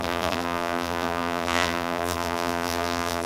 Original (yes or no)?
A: no